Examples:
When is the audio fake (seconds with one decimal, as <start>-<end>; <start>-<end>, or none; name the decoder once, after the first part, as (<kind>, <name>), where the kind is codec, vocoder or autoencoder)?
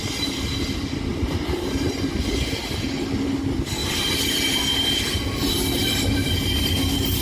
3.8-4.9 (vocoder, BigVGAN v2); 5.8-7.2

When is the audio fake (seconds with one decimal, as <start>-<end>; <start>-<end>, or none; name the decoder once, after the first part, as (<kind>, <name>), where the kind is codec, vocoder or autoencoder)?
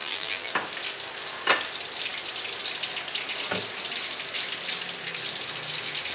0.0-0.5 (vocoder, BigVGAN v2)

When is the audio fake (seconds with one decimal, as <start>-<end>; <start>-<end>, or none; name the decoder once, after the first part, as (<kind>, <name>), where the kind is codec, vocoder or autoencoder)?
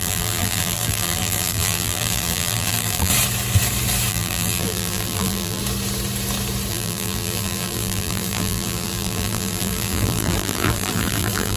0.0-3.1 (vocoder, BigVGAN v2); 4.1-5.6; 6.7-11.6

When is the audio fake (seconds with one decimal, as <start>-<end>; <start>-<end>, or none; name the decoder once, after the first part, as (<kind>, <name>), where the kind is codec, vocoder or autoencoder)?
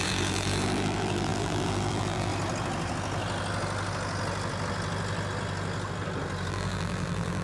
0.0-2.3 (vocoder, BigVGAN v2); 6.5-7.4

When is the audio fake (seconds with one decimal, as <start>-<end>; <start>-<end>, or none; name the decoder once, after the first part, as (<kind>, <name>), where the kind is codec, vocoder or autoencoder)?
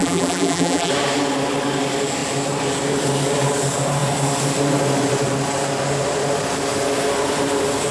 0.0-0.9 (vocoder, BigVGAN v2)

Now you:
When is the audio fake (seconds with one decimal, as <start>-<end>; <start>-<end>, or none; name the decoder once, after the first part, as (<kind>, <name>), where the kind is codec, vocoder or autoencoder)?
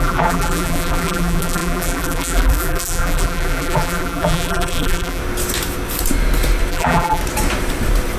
0.0-5.2 (vocoder, BigVGAN v2); 6.7-7.2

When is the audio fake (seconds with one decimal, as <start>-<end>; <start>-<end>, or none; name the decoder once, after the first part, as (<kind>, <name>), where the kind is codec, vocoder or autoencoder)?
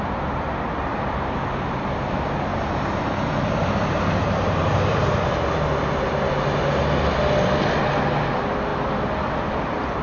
0.9-1.4 (vocoder, BigVGAN v2); 2.5-5.1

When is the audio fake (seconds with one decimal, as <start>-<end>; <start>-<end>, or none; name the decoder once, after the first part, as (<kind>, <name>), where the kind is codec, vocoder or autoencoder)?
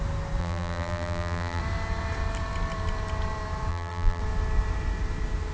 0.4-1.6 (vocoder, BigVGAN v2); 3.7-4.2